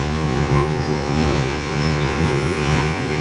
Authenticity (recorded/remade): remade